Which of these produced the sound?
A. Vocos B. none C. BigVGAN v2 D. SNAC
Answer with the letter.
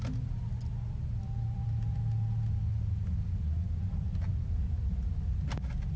B